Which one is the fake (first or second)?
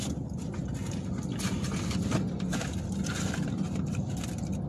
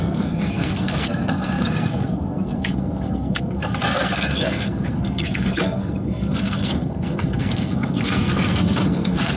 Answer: second